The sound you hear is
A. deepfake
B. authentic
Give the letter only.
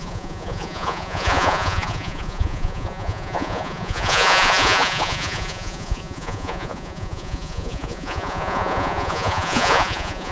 A